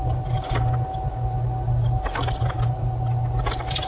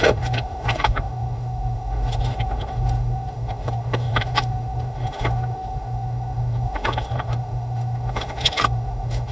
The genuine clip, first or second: first